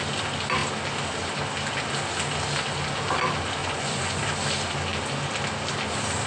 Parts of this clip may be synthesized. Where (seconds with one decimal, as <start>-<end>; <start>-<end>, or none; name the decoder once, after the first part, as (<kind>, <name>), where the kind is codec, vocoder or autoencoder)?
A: 3.6-4.2 (vocoder, Vocos)